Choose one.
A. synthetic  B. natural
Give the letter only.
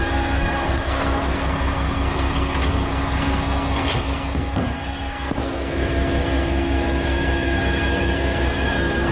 A